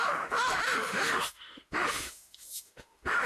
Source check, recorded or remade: remade